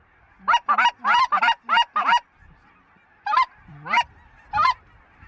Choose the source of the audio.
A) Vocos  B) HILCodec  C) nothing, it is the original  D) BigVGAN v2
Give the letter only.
D